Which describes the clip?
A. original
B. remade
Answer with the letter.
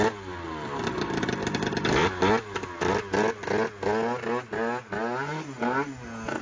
A